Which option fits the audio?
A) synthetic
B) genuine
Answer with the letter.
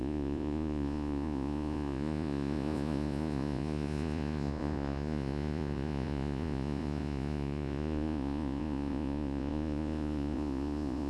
A